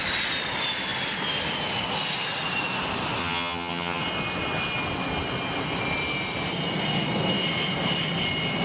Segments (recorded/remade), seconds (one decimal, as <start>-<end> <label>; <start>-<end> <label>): 0.0-3.2 recorded; 3.2-4.0 remade; 4.0-8.6 recorded